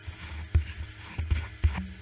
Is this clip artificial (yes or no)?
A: no